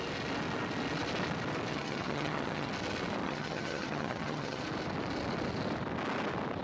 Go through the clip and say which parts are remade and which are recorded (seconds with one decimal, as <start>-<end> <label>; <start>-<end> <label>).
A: 0.0-1.7 recorded; 1.7-2.7 remade; 2.7-3.2 recorded; 3.2-4.6 remade; 4.6-6.6 recorded